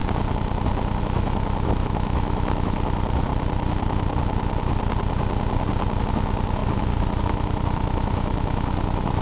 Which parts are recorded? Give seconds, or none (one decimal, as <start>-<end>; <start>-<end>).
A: 0.0-1.0; 3.3-6.0